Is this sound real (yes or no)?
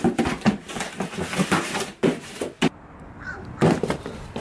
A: yes